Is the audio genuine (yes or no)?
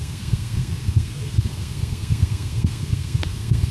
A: no